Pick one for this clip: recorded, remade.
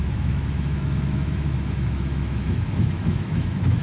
remade